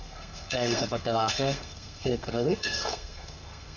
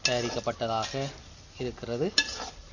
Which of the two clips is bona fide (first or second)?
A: second